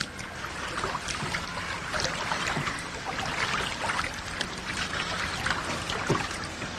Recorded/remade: recorded